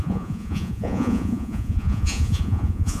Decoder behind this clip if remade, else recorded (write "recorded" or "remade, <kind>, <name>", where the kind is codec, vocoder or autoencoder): remade, vocoder, Vocos